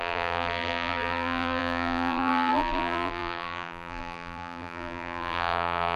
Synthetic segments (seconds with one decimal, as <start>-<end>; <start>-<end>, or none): 0.0-6.0